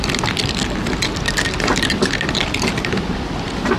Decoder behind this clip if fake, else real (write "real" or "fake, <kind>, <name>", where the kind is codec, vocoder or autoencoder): real